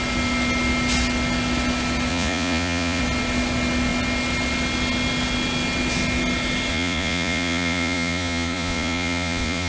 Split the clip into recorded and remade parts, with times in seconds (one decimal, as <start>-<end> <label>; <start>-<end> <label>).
0.0-2.1 recorded; 2.1-3.0 remade; 3.0-6.7 recorded; 6.7-9.7 remade